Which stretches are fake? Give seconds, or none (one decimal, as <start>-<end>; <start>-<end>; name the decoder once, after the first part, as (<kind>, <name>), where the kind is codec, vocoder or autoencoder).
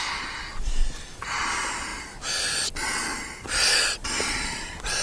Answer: none